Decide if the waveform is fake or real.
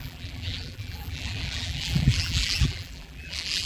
fake